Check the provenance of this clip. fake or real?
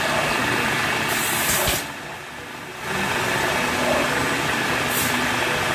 real